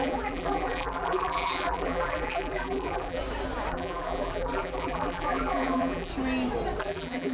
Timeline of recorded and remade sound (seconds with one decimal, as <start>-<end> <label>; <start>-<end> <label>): 0.0-3.2 remade; 3.2-3.7 recorded; 3.7-6.1 remade; 6.1-6.8 recorded; 6.8-7.3 remade

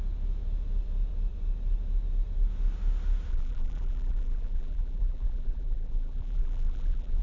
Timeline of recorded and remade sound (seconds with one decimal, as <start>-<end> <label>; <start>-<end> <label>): 0.0-3.3 recorded; 3.3-7.2 remade

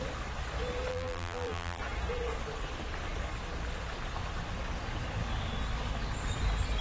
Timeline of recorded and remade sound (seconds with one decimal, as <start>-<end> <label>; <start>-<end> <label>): 0.0-0.9 recorded; 0.9-1.8 remade; 1.8-6.8 recorded

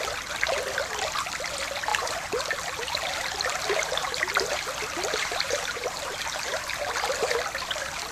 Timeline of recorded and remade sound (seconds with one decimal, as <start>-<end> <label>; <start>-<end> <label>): 0.0-1.9 recorded; 1.9-4.2 remade; 4.2-5.2 recorded; 5.2-6.8 remade; 6.8-8.1 recorded